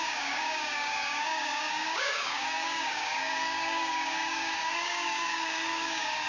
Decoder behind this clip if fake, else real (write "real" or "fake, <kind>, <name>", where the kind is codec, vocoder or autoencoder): fake, codec, DAC